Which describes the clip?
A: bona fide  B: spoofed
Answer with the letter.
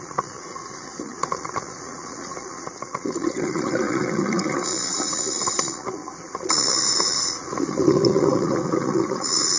B